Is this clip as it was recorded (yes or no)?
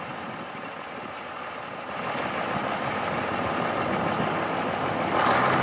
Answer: yes